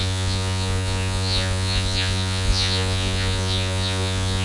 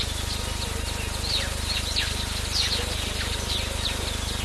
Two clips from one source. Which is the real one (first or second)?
second